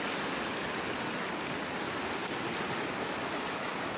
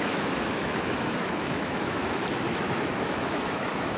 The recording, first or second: first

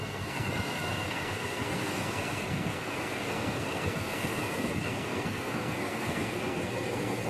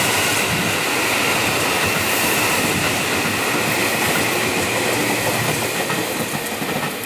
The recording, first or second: second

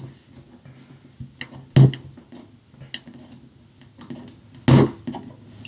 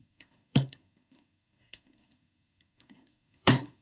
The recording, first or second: first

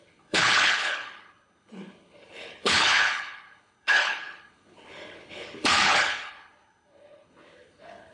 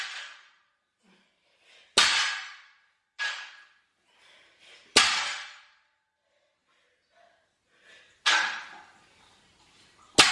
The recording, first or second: second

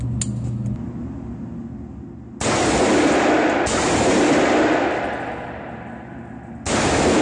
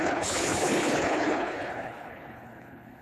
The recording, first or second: first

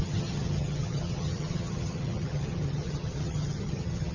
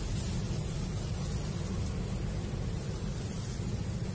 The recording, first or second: second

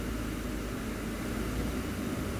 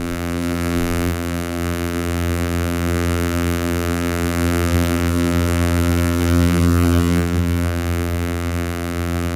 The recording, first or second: first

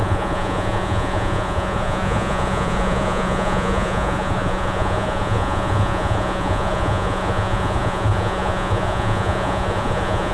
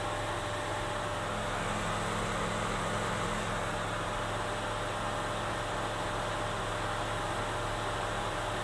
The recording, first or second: second